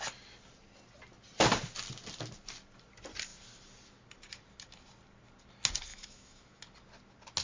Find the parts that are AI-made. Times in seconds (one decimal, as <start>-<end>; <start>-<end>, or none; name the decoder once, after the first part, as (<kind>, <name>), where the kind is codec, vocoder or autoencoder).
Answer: 5.9-6.6 (autoencoder, DAC-VAE)